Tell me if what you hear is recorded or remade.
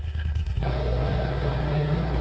remade